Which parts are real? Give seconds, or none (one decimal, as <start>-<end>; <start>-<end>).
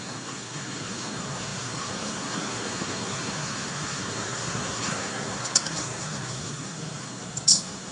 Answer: none